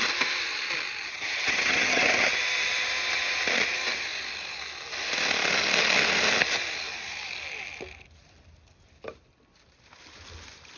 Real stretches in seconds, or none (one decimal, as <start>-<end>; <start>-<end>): 0.0-1.1; 2.3-10.8